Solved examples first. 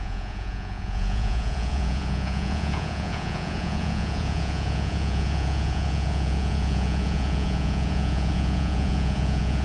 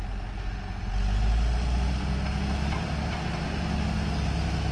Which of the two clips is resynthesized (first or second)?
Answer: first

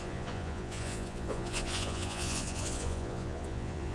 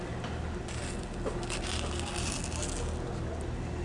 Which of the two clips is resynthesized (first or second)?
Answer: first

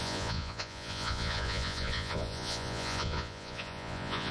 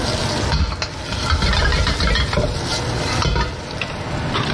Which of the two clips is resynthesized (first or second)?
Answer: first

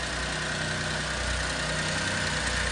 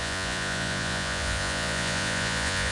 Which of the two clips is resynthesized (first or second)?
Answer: second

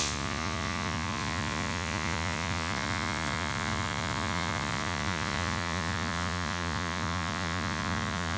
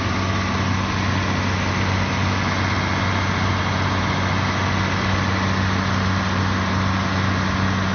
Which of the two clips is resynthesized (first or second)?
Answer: first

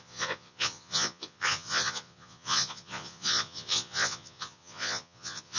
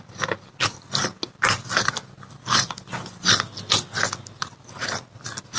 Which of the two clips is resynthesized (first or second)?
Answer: first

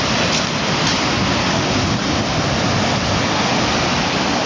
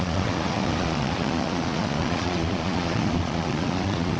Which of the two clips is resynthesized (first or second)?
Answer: second